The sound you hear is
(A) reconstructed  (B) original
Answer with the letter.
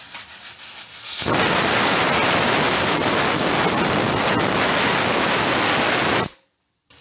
B